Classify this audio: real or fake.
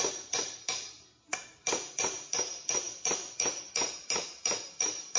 fake